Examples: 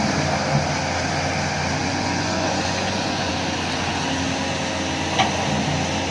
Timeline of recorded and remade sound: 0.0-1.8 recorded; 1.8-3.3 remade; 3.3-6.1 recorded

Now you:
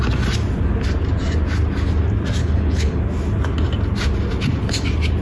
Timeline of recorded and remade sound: 0.0-2.4 recorded; 2.4-3.0 remade; 3.0-5.2 recorded

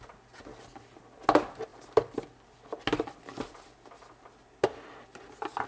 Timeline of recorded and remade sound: 0.0-5.7 recorded

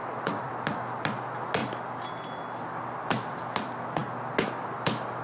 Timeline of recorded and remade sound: 0.0-0.5 remade; 0.5-5.2 recorded